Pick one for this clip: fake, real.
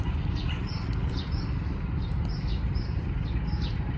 real